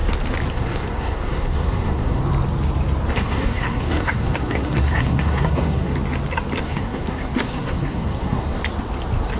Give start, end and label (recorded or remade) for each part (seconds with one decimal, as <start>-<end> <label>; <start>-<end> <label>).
0.0-0.5 recorded; 0.5-2.2 remade; 2.2-3.1 recorded; 3.1-5.9 remade; 5.9-6.6 recorded; 6.6-8.6 remade; 8.6-9.4 recorded